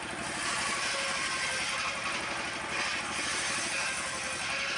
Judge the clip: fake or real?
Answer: real